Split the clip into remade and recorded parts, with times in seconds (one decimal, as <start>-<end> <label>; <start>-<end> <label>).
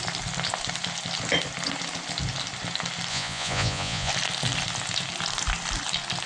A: 0.0-3.1 recorded; 3.1-4.1 remade; 4.1-6.3 recorded